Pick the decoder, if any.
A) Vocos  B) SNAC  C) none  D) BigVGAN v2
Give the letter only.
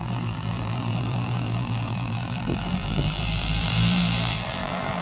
D